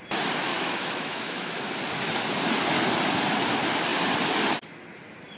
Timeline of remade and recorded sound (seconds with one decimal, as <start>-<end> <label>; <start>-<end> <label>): 0.0-0.5 recorded; 0.5-1.7 remade; 1.7-5.4 recorded